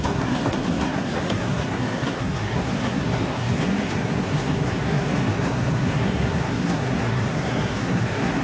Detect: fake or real fake